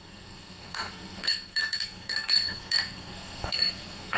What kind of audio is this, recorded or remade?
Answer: remade